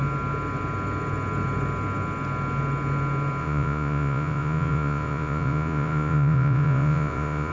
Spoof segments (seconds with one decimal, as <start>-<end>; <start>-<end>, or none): 3.4-7.5